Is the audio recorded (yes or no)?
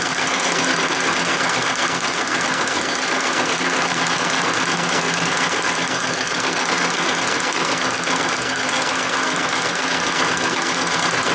no